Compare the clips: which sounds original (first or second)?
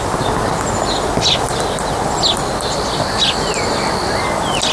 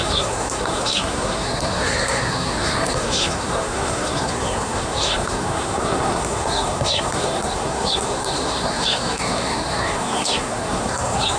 first